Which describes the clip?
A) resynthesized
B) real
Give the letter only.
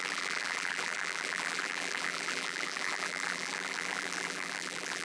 A